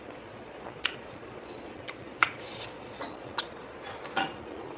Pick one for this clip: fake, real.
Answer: fake